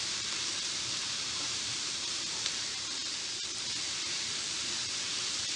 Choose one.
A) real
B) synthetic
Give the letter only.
B